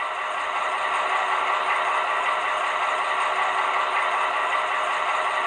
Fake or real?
real